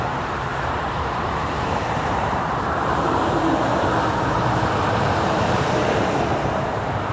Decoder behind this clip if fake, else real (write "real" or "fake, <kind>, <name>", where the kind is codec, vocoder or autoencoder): fake, vocoder, BigVGAN v2